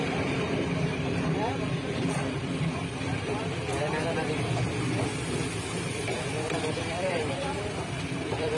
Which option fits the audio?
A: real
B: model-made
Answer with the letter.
B